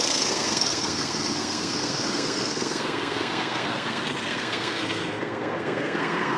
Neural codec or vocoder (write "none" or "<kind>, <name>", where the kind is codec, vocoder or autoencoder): codec, SNAC